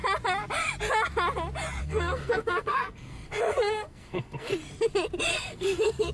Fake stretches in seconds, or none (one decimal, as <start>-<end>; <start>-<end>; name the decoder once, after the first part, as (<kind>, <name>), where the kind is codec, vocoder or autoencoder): 1.8-4.5 (codec, SNAC); 5.3-6.1